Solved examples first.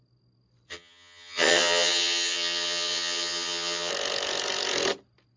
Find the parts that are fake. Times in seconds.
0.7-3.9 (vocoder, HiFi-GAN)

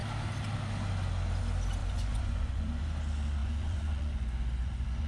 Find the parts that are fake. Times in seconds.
1.8-2.8 (vocoder, Vocos); 3.4-5.1

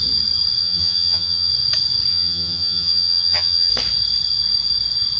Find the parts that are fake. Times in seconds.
0.6-1.5 (vocoder, HiFi-GAN); 2.1-3.7

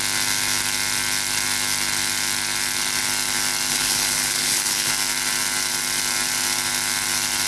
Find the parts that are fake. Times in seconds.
3.7-4.9 (codec, HILCodec)

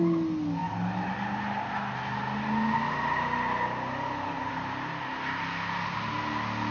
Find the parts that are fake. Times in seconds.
none